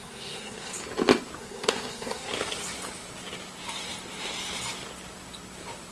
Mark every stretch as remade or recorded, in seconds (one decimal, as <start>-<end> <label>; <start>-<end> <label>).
0.0-0.7 remade; 0.7-1.4 recorded; 1.4-2.3 remade; 2.3-5.9 recorded